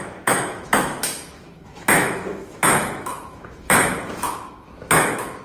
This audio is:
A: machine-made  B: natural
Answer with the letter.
A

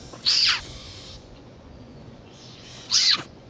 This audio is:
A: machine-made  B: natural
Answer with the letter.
A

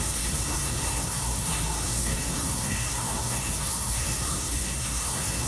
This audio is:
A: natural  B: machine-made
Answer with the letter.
B